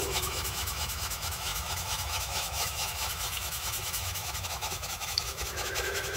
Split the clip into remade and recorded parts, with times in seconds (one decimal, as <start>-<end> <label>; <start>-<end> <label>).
0.0-6.2 remade